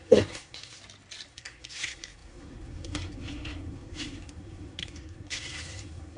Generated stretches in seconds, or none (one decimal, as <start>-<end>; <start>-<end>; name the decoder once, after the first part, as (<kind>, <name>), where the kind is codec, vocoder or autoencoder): 0.0-0.8 (codec, SNAC); 1.3-6.2